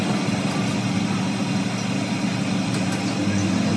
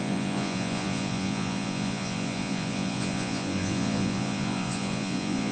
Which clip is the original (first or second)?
first